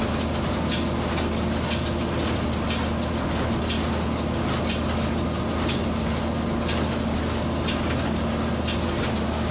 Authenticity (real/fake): real